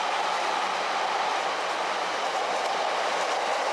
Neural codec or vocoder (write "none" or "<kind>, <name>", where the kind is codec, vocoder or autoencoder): none